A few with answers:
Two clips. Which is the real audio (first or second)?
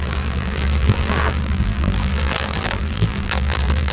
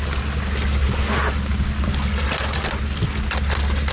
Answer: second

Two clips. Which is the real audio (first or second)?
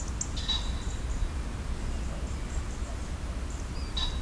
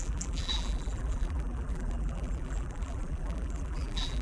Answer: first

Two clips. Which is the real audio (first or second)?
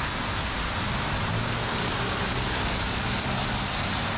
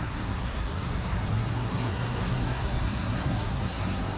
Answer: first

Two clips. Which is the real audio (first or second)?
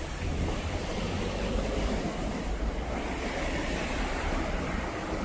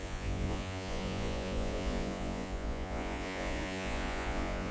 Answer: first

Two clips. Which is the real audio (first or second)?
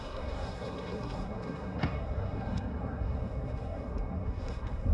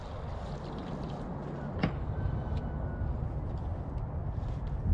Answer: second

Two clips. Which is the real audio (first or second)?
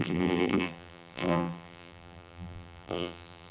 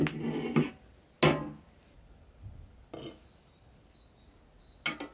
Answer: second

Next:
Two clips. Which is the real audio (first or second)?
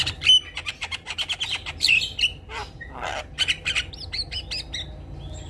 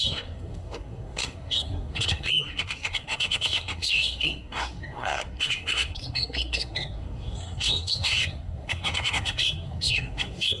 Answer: first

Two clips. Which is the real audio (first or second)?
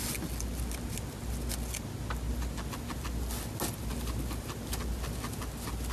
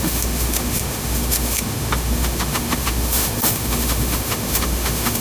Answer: first